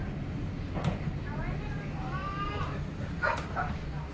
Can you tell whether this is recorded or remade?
recorded